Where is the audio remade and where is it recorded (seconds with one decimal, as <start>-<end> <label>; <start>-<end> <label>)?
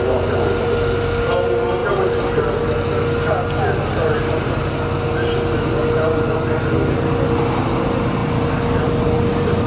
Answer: 0.0-9.7 recorded